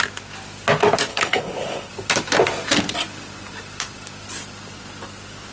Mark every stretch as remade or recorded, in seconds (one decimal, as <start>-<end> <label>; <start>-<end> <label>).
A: 0.0-1.1 recorded; 1.1-1.9 remade; 1.9-5.5 recorded